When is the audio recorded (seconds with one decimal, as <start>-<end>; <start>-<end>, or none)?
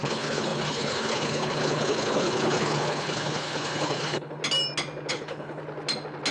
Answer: 4.4-5.1; 5.6-6.3